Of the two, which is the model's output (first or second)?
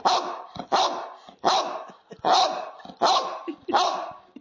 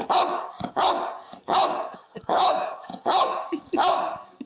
second